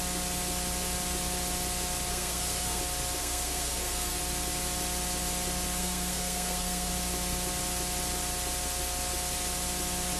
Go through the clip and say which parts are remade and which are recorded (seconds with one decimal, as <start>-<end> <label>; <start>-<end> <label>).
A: 0.0-2.1 recorded; 2.1-2.8 remade; 2.8-3.2 recorded; 3.2-4.2 remade; 4.2-5.8 recorded; 5.8-6.9 remade; 6.9-10.2 recorded